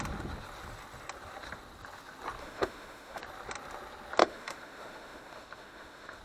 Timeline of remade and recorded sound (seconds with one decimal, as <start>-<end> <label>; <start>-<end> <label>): 0.0-2.4 recorded; 2.4-3.2 remade; 3.2-4.2 recorded; 4.2-6.2 remade